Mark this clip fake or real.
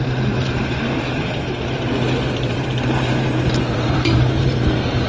fake